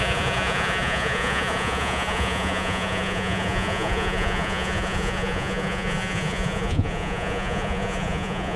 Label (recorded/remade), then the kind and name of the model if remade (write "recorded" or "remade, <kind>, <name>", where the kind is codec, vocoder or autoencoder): remade, vocoder, Vocos